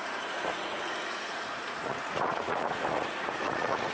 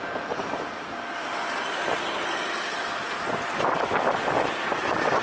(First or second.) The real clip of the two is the second